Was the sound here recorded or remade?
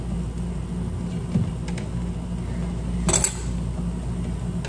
recorded